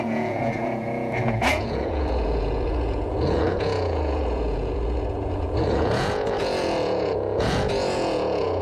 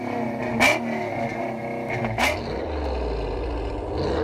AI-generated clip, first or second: first